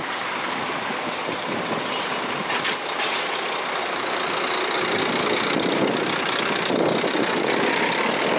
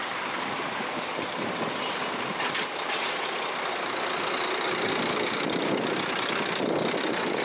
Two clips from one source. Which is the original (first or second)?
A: first